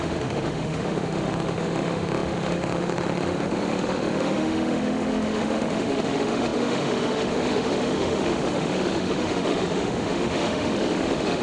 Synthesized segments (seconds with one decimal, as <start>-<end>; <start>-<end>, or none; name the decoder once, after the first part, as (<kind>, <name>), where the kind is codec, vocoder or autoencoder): 0.0-11.4 (autoencoder, DAC-VAE)

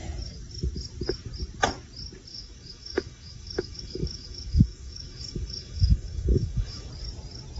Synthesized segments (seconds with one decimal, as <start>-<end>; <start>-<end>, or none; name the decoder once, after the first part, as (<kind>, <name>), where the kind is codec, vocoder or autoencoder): 2.3-6.9 (autoencoder, DAC-VAE)

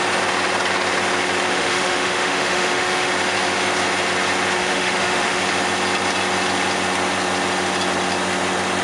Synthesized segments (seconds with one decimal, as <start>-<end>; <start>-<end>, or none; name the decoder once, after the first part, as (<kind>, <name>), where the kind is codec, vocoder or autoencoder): 1.5-3.1 (autoencoder, DAC-VAE); 4.6-5.4

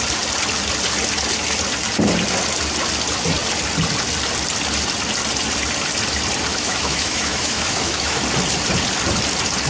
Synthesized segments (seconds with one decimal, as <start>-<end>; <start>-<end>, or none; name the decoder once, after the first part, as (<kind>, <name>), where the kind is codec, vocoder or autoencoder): 6.5-8.2 (autoencoder, DAC-VAE)

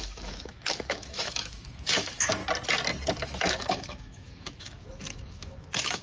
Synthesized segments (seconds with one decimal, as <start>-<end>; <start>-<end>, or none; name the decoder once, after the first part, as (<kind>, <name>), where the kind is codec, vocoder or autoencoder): 0.0-2.4 (autoencoder, DAC-VAE); 3.1-6.0